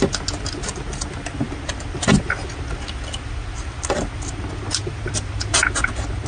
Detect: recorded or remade recorded